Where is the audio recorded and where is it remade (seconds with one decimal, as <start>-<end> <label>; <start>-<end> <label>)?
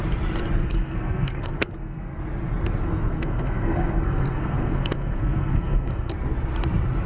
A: 0.0-0.6 recorded; 0.6-2.2 remade; 2.2-2.8 recorded; 2.8-6.1 remade; 6.1-7.1 recorded